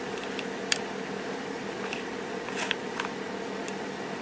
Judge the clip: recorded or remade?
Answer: recorded